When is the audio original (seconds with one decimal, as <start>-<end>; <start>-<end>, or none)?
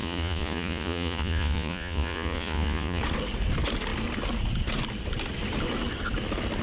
3.0-6.6